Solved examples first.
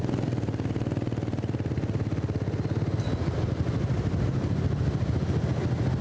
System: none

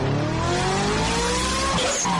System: none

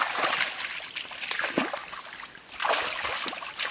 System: vocoder, BigVGAN v2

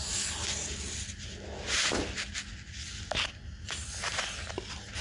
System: none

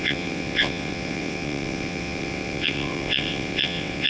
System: vocoder, WaveNeXt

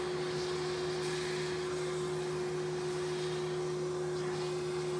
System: none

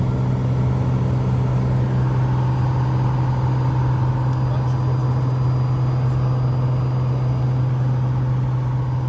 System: none